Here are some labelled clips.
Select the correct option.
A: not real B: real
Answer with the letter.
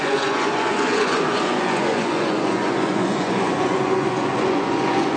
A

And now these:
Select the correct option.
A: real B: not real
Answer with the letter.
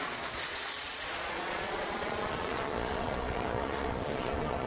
B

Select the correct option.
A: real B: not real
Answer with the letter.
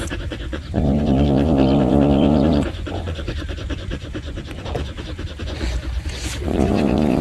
B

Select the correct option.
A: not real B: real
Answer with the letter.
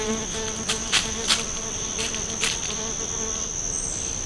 B